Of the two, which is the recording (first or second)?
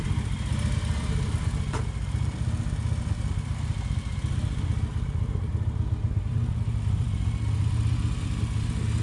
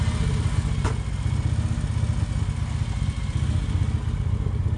second